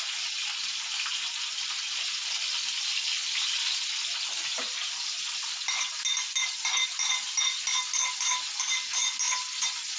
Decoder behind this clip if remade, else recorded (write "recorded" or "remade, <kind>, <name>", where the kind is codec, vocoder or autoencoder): recorded